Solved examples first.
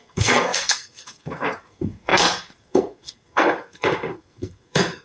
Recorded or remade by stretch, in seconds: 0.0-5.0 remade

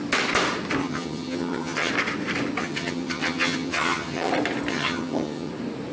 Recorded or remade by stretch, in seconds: 0.0-0.8 recorded; 0.8-1.9 remade; 1.9-2.6 recorded; 2.6-4.3 remade; 4.3-4.7 recorded; 4.7-5.5 remade; 5.5-5.9 recorded

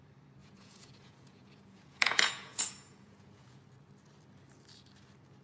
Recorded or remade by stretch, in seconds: 0.0-0.4 recorded; 0.4-3.6 remade; 3.6-5.4 recorded